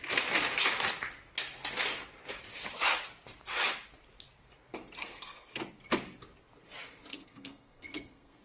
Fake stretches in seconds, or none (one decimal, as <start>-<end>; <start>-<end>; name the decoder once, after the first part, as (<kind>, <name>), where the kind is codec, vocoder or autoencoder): 5.0-5.6 (codec, SNAC); 7.1-8.4